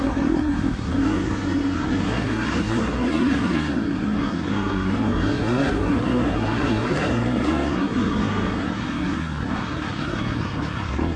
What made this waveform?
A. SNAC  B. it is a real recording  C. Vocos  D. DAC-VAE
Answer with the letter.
A